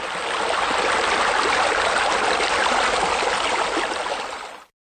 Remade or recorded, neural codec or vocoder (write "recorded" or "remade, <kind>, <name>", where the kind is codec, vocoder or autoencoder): recorded